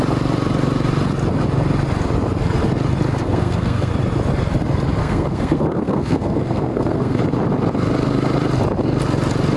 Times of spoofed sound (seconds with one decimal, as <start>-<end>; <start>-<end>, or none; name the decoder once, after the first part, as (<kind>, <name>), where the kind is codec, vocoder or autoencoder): 3.2-3.9 (codec, SNAC); 5.0-7.2